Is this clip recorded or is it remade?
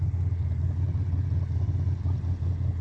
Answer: recorded